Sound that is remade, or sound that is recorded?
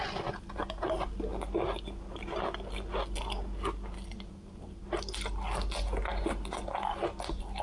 recorded